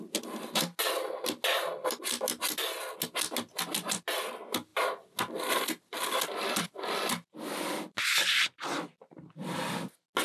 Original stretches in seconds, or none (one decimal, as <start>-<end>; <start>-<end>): 0.0-10.2